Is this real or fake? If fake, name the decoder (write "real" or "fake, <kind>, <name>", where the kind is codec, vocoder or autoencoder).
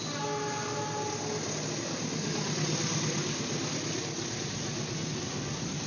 real